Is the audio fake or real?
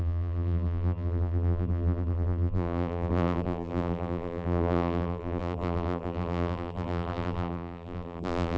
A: fake